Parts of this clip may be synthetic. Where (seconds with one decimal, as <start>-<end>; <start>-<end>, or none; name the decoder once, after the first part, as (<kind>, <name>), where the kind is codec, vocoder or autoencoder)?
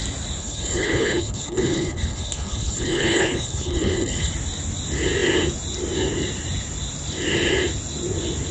0.4-4.3 (codec, HILCodec)